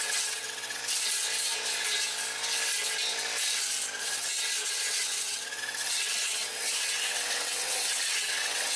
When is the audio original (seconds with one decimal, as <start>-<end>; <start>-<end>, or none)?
0.8-4.0